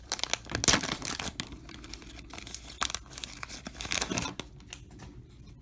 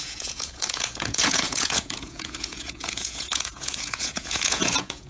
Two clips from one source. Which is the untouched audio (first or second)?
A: first